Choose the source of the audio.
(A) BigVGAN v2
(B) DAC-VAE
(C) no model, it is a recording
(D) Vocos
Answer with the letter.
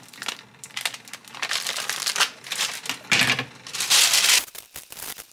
C